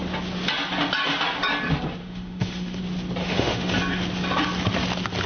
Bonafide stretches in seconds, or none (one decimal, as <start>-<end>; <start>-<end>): 0.0-2.0; 2.8-3.2; 3.7-5.3